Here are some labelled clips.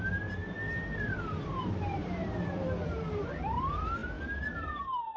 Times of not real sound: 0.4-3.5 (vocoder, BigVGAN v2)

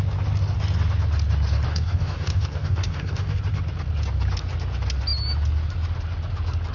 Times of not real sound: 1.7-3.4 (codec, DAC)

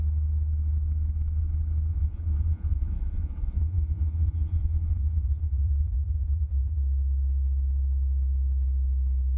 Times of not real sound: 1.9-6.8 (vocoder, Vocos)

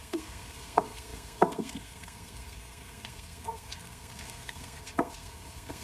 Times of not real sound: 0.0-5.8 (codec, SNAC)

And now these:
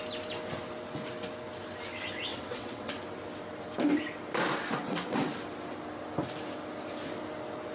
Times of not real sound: 2.3-2.9 (vocoder, WaveNeXt); 4.8-5.3

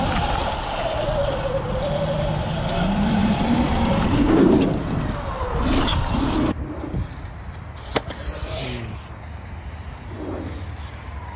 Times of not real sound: 3.2-4.4 (vocoder, BigVGAN v2)

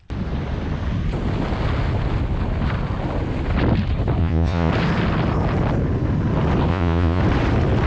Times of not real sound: 4.2-4.7 (vocoder, Vocos); 6.7-7.2

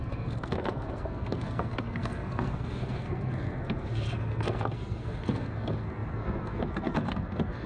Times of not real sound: 0.0-7.7 (codec, SNAC)